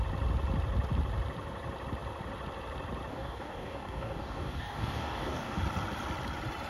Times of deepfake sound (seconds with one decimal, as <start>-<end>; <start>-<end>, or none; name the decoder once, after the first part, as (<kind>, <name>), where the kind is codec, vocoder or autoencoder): 3.1-5.6 (codec, DAC)